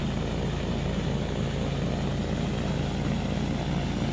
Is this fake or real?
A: real